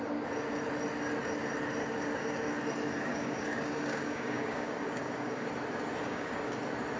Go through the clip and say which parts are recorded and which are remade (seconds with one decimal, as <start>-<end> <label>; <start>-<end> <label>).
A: 0.0-1.8 recorded; 1.8-2.6 remade; 2.6-3.1 recorded; 3.1-5.5 remade; 5.5-6.0 recorded; 6.0-6.6 remade; 6.6-7.0 recorded